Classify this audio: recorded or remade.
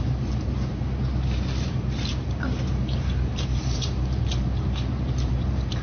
remade